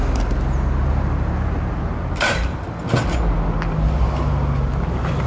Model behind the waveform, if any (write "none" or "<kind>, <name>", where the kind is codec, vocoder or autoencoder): none